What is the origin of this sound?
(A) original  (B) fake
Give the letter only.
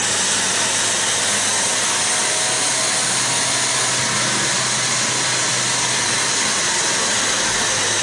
A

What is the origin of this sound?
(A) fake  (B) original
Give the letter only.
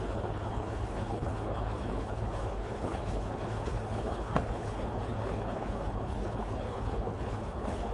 A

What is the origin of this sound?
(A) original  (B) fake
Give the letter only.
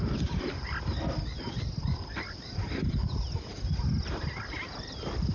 A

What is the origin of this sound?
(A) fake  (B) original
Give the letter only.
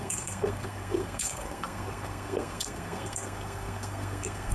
A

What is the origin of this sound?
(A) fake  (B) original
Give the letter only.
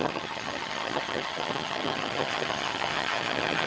A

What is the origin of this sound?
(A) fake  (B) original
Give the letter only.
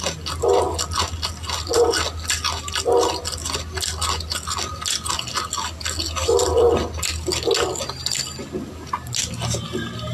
B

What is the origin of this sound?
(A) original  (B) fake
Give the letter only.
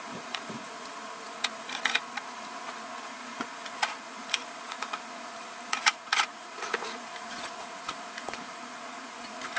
B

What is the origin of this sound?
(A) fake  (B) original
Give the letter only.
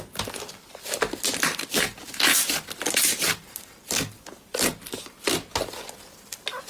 B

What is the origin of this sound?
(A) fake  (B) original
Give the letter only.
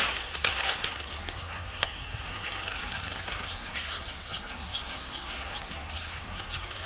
A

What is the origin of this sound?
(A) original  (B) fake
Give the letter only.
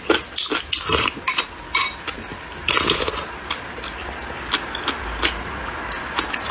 A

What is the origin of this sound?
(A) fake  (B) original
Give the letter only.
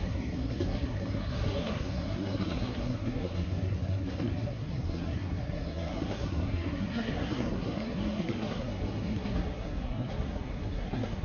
A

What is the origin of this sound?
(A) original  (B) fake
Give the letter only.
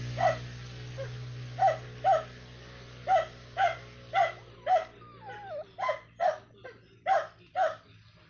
A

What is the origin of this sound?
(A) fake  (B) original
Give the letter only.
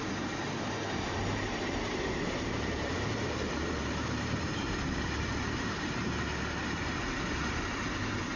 A